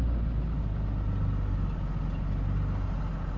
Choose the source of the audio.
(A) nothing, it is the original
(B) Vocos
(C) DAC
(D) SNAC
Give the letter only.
A